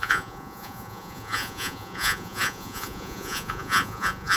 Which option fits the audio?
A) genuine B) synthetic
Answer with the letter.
B